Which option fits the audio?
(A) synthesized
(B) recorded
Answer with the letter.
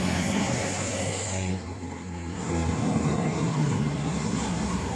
A